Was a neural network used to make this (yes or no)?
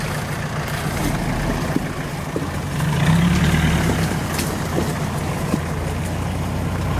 no